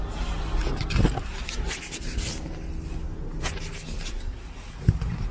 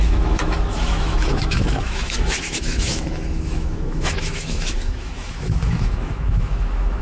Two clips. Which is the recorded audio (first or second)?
first